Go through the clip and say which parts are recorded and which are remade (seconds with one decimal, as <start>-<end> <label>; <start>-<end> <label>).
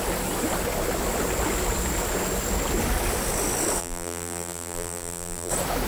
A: 0.0-3.8 recorded; 3.8-5.5 remade; 5.5-5.9 recorded